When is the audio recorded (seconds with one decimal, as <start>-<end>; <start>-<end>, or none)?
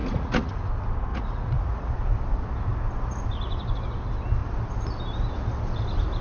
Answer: 0.7-1.1; 1.9-6.2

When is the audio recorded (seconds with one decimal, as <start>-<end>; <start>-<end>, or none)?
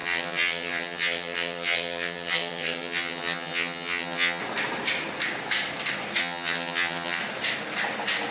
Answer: 4.4-6.2; 7.2-8.3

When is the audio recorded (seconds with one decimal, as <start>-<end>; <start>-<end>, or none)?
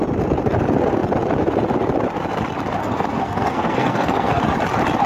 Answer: 0.0-2.8; 4.4-5.1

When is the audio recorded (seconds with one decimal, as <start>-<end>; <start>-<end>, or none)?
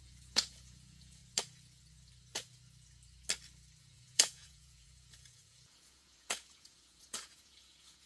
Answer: 1.2-3.8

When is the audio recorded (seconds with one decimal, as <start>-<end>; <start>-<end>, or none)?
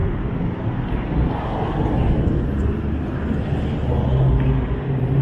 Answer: 0.0-5.2